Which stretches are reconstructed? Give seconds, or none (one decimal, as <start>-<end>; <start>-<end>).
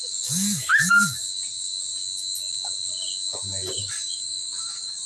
0.0-0.7; 3.8-5.1